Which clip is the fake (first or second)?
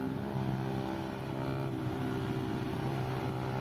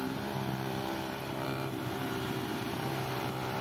second